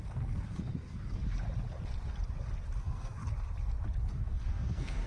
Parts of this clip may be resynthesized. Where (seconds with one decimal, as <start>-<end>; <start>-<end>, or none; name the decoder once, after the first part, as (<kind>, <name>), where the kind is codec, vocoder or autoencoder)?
0.0-1.2 (codec, SNAC); 2.8-3.2; 4.0-5.1